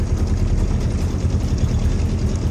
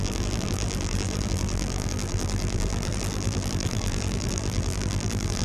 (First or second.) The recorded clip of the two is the first